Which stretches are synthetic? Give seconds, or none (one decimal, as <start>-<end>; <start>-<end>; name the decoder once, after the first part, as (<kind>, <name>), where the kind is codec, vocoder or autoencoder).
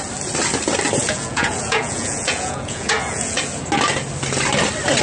1.0-3.4 (vocoder, Vocos)